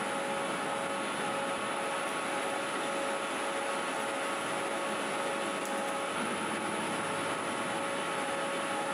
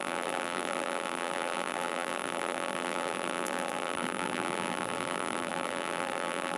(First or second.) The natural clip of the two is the first